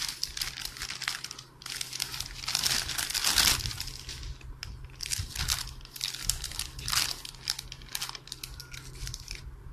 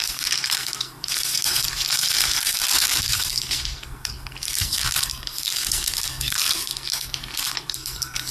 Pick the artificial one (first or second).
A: second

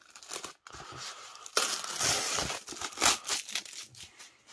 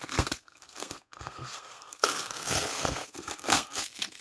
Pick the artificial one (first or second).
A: second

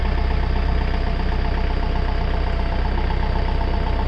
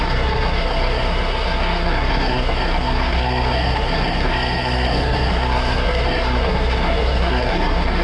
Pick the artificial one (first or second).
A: second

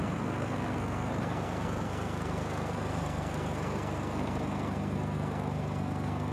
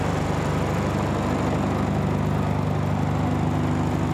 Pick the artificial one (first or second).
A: first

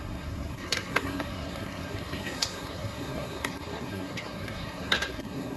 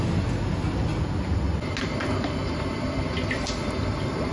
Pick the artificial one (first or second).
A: first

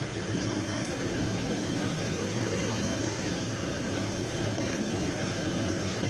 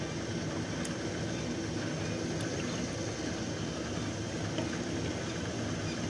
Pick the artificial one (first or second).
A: first